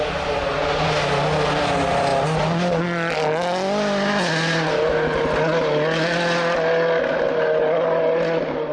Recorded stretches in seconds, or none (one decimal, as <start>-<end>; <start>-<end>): 0.0-8.7